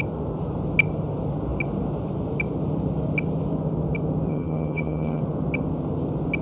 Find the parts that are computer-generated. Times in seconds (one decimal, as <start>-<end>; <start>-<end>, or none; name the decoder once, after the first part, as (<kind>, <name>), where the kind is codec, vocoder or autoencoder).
4.3-5.2 (vocoder, HiFi-GAN)